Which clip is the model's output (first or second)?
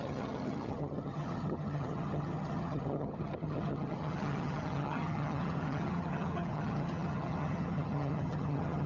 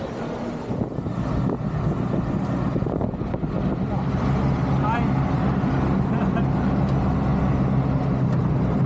first